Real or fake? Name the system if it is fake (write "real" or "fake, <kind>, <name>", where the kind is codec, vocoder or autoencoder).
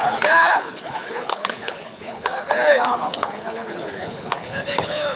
fake, codec, HILCodec